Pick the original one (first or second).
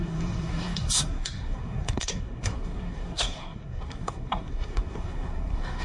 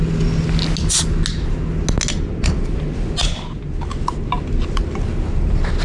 second